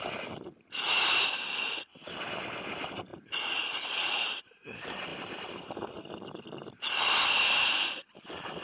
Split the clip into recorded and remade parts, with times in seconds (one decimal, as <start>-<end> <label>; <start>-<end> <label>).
0.0-8.6 recorded